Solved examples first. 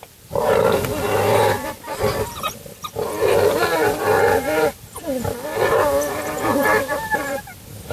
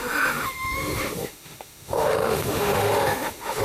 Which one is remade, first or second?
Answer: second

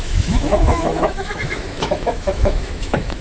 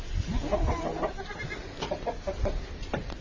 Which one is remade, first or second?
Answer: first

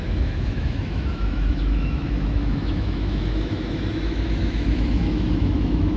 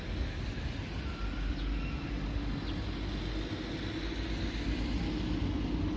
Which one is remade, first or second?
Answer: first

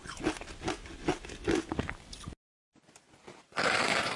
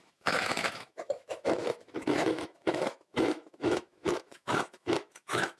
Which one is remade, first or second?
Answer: second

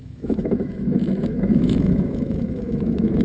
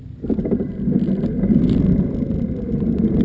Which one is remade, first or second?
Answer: first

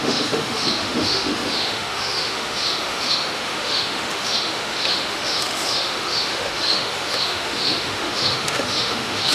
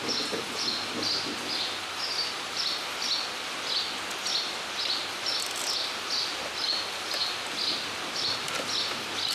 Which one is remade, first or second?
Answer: first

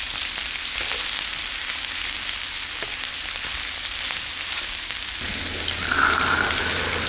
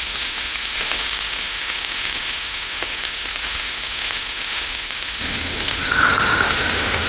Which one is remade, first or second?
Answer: second